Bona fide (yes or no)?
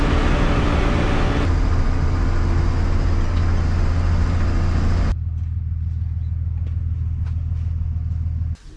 yes